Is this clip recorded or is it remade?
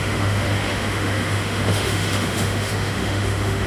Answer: remade